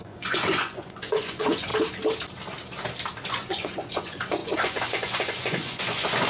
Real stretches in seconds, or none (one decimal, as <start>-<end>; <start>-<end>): 1.7-3.3

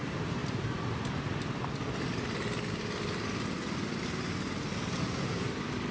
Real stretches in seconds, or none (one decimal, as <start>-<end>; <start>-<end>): 0.0-5.9